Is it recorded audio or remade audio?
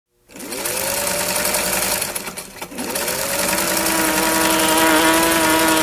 recorded